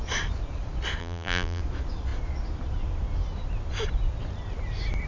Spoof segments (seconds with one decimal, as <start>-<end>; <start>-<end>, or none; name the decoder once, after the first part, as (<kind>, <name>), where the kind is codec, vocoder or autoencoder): 1.0-1.6 (vocoder, BigVGAN v2)